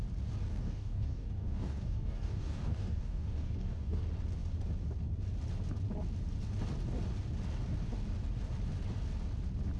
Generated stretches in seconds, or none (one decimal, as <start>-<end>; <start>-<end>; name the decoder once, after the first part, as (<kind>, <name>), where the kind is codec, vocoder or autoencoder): 0.5-4.0 (codec, DAC)

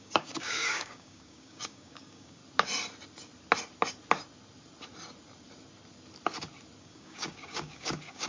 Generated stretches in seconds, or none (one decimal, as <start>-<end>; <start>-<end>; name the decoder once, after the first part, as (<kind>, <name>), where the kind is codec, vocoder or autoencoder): 0.0-2.4 (codec, DAC); 6.8-8.3

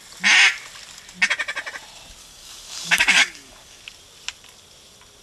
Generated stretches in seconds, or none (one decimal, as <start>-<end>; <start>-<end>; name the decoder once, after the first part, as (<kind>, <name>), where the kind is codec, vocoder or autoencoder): 2.2-3.8 (codec, DAC)

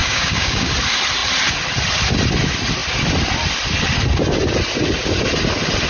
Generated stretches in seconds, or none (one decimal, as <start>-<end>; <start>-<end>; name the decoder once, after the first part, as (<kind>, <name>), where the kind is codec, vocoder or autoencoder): 0.0-0.7 (codec, DAC)

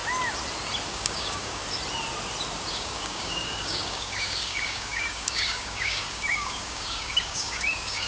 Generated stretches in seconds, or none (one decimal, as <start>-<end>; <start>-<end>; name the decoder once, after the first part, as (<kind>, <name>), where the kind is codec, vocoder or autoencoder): 0.9-1.6 (codec, DAC); 2.7-8.1

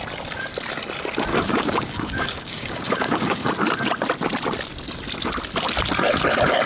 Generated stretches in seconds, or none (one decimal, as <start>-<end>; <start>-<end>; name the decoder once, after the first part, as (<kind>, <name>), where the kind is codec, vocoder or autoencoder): 1.3-3.5 (codec, DAC)